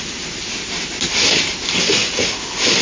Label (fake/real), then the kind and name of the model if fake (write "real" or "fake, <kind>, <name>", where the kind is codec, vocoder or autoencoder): real